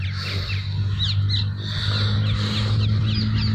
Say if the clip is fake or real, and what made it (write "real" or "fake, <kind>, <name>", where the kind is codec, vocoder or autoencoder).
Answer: real